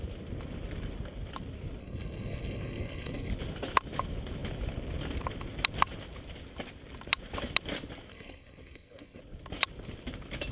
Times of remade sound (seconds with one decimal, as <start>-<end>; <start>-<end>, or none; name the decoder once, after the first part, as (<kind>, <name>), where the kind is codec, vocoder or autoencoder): 1.8-3.3 (codec, SNAC); 8.1-9.2